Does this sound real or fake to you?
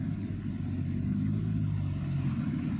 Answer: real